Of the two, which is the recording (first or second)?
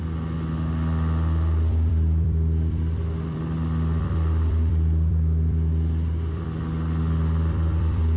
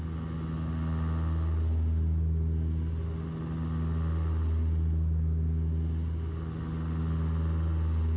second